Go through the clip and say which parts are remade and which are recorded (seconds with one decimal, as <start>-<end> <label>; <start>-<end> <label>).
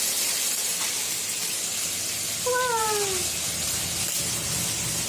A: 0.0-5.1 recorded